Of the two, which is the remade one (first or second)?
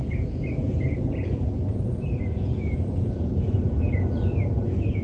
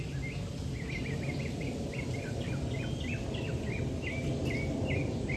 first